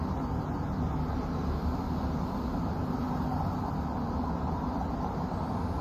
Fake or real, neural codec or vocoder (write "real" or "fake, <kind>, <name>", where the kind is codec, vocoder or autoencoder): real